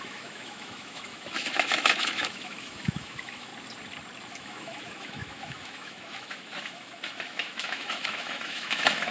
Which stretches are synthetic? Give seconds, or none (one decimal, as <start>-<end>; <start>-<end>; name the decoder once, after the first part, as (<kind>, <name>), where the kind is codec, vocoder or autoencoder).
0.0-3.5 (autoencoder, DAC-VAE); 4.3-9.1